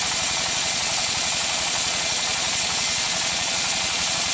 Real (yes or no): no